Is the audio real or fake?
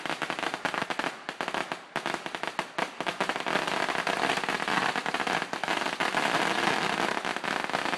real